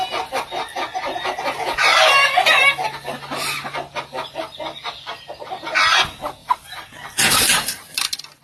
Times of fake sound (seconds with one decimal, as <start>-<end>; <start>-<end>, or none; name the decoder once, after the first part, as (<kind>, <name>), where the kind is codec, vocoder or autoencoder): 0.7-1.4 (vocoder, BigVGAN v2); 1.8-2.6; 6.4-8.4